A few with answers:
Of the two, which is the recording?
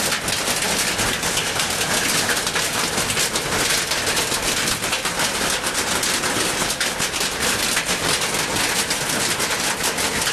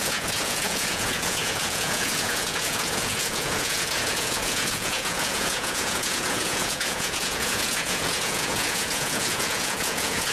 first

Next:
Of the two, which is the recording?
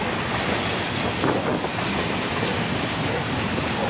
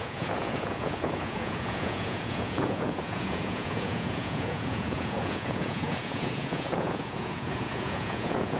first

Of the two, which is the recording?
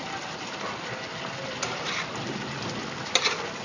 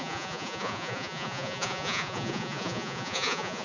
first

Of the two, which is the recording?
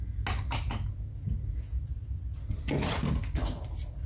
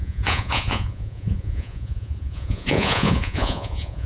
first